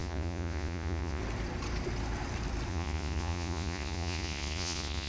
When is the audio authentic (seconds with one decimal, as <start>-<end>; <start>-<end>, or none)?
1.2-2.7